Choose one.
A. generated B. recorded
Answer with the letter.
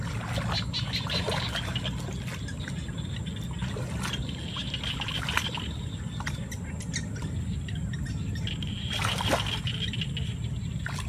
B